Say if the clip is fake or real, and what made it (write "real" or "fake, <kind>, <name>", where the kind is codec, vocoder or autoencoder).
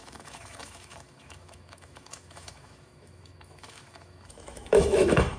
fake, autoencoder, DAC-VAE